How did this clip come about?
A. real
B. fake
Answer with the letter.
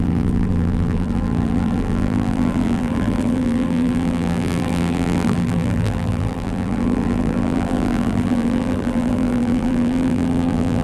B